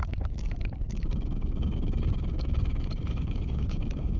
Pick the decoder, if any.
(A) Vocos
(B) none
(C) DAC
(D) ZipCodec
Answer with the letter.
C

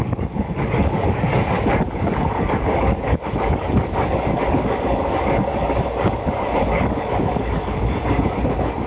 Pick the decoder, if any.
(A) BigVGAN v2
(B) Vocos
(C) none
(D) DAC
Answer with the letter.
D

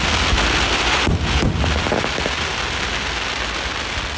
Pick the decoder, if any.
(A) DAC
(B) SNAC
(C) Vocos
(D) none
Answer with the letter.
D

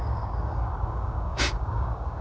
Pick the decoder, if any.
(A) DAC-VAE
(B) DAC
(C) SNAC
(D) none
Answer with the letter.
B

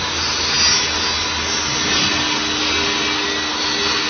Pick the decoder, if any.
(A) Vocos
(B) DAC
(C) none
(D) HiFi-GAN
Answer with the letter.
C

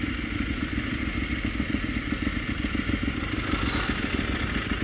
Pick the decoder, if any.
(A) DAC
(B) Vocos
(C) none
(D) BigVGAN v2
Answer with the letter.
C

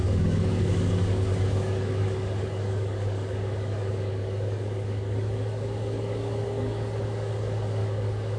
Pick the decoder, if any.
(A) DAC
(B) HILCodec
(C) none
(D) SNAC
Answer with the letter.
A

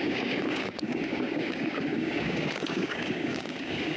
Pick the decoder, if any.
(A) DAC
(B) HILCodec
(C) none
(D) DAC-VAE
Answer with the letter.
A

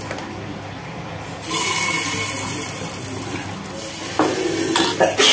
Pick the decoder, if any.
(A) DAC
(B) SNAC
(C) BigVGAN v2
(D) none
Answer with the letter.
D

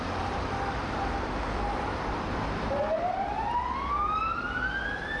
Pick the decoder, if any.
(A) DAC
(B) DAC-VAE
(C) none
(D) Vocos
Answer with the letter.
C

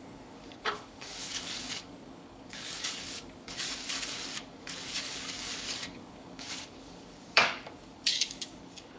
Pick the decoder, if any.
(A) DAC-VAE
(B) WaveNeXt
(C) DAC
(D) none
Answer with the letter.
C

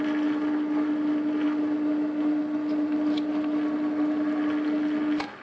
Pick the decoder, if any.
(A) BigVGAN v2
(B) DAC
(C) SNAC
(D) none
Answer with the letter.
D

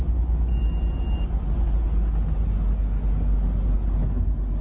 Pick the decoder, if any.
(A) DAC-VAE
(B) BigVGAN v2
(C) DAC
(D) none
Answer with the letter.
D